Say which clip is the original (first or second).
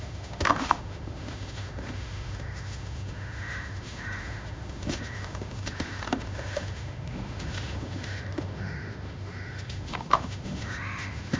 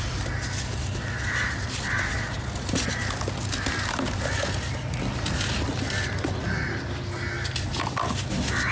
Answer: second